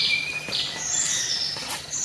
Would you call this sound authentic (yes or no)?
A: yes